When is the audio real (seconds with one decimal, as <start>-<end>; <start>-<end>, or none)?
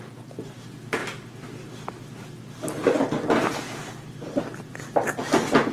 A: 0.0-5.7